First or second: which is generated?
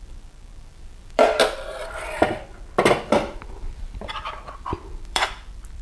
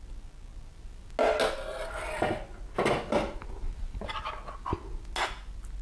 first